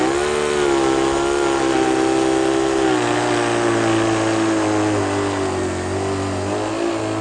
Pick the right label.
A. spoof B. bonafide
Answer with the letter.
B